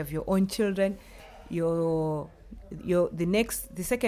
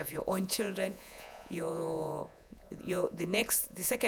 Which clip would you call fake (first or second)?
second